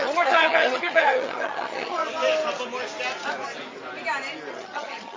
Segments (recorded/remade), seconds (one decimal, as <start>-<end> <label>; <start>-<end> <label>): 0.0-2.0 remade; 2.0-4.5 recorded; 4.5-5.2 remade